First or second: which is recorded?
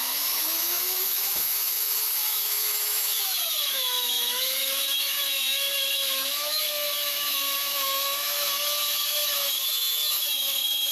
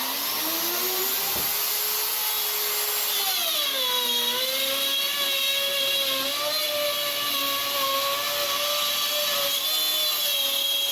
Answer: second